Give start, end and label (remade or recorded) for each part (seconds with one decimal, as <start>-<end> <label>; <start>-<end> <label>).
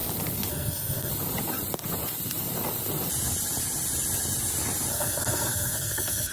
0.0-0.5 recorded; 0.5-1.1 remade; 1.1-4.9 recorded; 4.9-6.3 remade